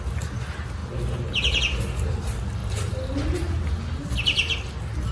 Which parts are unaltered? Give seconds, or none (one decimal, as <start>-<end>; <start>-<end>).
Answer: 0.0-2.6; 3.5-5.1